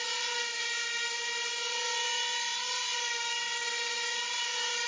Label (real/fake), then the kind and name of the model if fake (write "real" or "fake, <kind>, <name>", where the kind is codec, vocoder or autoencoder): real